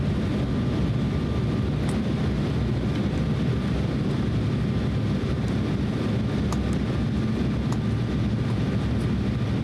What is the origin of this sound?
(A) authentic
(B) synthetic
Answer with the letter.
A